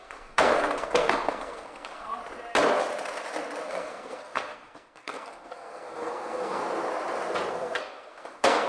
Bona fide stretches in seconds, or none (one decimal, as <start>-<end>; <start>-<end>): 2.2-3.7; 6.6-7.5